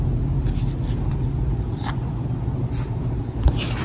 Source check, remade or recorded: recorded